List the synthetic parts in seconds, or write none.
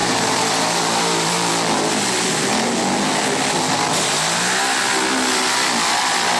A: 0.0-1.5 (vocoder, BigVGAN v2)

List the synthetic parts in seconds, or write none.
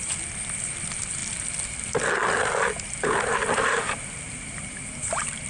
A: 3.4-5.5 (vocoder, BigVGAN v2)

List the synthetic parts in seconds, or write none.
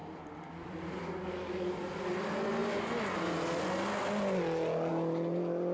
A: 0.0-1.0 (vocoder, BigVGAN v2)